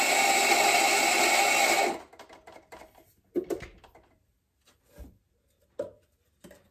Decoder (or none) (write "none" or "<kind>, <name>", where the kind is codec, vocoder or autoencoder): none